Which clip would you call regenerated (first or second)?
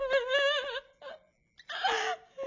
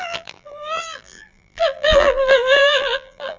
second